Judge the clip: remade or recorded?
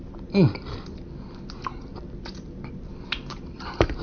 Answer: recorded